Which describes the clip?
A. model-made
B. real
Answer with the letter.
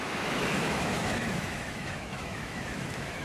A